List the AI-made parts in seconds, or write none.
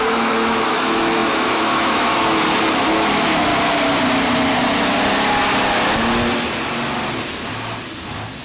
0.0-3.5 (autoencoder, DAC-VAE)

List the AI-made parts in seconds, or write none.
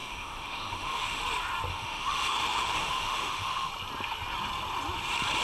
0.0-1.2 (autoencoder, DAC-VAE); 1.7-3.7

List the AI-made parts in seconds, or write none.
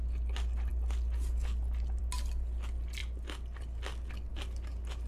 none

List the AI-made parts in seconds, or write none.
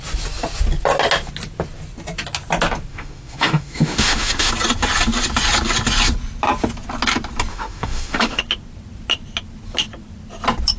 2.9-4.5 (autoencoder, DAC-VAE); 7.5-8.4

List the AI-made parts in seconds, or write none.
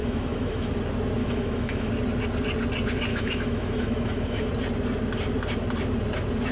0.0-0.7 (autoencoder, DAC-VAE); 1.2-1.9; 3.1-4.5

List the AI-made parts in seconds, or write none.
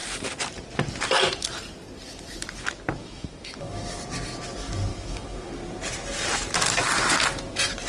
3.0-4.0 (autoencoder, DAC-VAE); 4.9-5.5